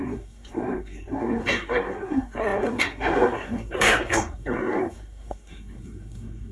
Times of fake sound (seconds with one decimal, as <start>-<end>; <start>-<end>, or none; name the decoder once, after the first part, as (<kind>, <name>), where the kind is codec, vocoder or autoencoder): 0.0-6.5 (codec, SNAC)